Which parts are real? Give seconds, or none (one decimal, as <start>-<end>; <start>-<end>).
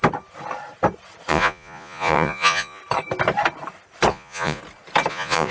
0.0-1.3; 2.8-4.1; 4.6-5.1